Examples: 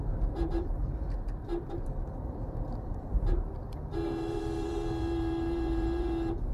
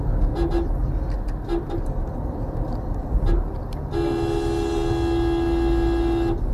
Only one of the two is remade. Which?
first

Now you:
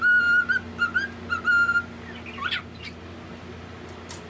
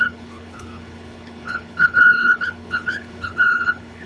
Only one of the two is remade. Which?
second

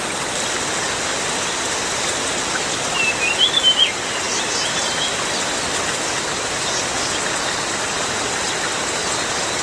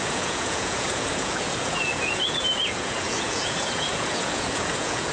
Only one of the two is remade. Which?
second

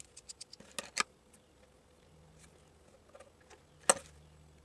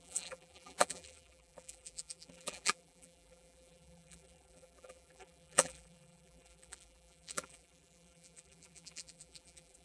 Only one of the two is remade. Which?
second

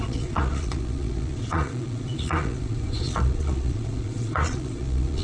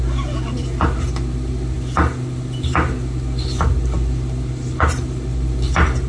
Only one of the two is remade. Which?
first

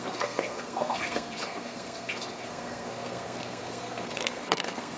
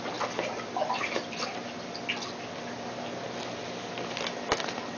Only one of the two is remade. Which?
first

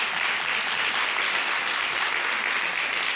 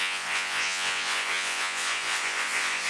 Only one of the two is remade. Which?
second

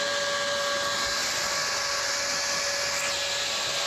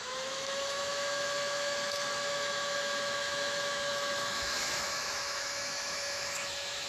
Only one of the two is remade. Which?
second